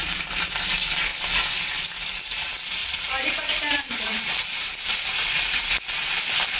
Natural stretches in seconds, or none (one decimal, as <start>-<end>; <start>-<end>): 1.1-2.1